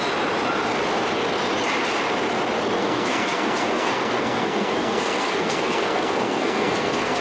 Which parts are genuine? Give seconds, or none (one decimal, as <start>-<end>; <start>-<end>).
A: 0.0-2.8